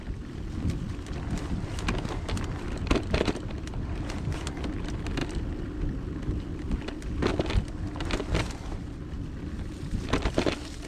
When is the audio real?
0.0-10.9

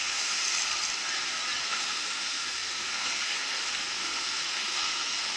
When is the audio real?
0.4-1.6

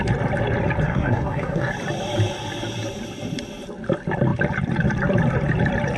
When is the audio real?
0.0-0.8; 1.7-6.0

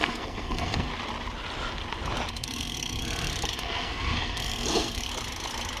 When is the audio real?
0.9-2.3; 5.1-5.8